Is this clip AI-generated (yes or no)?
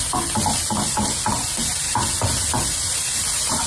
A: no